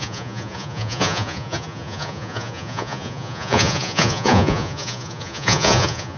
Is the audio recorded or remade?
remade